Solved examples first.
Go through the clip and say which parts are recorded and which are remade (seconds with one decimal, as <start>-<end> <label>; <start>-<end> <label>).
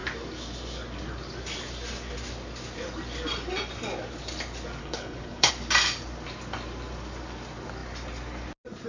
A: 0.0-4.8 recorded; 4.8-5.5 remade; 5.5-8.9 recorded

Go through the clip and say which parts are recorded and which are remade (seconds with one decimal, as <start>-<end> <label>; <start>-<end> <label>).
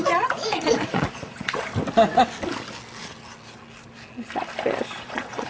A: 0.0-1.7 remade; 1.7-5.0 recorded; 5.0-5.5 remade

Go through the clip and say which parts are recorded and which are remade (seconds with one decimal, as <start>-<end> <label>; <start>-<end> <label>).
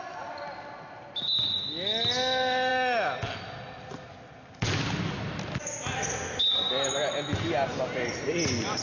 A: 0.0-8.8 recorded